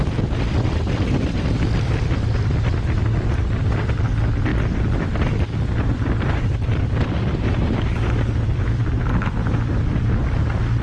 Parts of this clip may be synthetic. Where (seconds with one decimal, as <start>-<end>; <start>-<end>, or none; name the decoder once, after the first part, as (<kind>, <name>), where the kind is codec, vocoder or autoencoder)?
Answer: 0.0-10.8 (vocoder, BigVGAN v2)